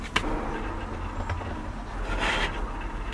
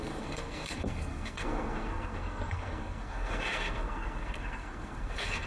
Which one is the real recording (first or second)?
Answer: first